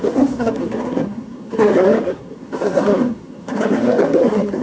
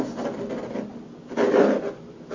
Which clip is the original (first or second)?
second